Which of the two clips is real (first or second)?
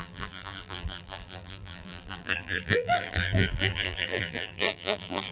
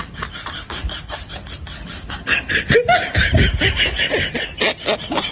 second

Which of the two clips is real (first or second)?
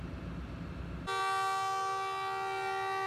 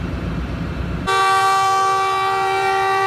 first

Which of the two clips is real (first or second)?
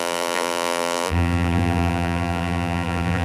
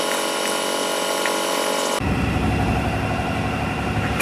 second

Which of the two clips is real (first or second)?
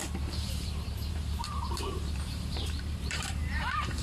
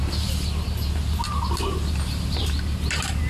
second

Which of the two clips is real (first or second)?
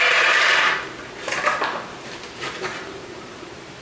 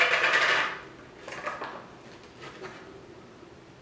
second